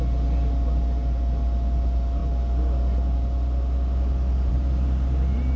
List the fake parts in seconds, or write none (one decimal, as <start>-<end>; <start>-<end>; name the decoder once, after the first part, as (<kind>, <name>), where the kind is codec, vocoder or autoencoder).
none